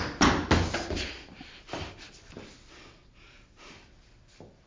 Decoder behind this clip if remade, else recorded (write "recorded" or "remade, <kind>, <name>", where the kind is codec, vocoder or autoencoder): recorded